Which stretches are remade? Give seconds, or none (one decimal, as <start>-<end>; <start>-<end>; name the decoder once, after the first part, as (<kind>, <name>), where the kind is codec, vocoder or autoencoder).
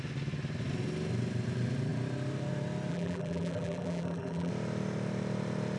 2.9-4.5 (vocoder, BigVGAN v2)